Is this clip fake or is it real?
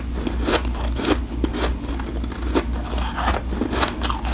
real